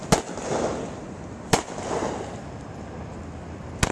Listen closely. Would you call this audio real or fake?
real